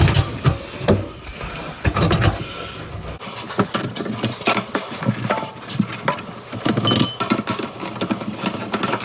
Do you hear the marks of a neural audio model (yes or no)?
no